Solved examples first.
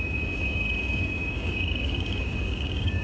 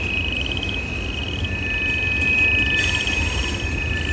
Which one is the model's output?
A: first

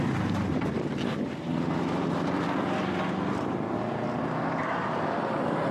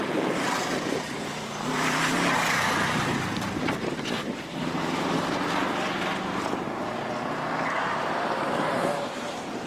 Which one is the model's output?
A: second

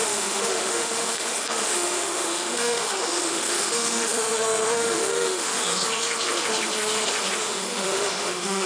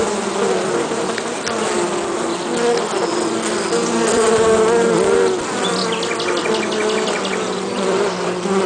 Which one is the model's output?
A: first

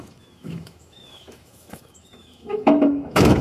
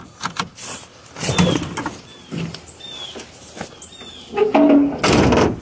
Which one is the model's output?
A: first